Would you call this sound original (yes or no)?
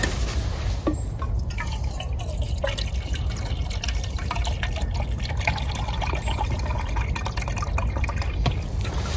yes